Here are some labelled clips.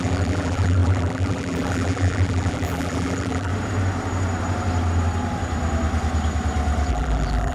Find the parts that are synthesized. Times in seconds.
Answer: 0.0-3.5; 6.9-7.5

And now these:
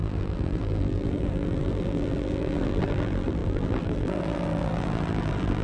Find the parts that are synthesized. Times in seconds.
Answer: 0.0-5.6

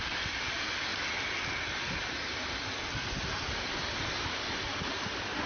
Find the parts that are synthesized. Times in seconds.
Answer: none

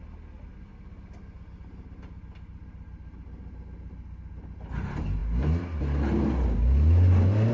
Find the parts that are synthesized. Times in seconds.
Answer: none

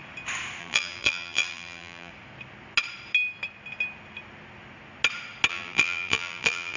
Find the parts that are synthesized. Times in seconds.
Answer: 0.6-2.1; 5.5-6.8

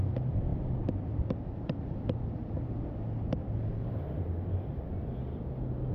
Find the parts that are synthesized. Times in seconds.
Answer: 0.5-2.8

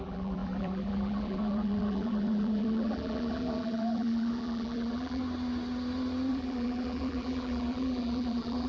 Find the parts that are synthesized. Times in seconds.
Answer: 0.0-5.2; 6.3-8.7

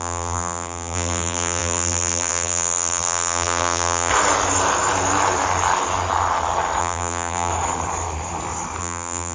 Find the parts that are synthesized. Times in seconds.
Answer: 0.0-4.1; 6.8-7.5; 8.8-9.3